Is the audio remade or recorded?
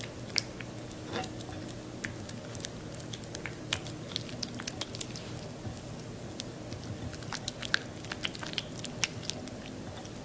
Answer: recorded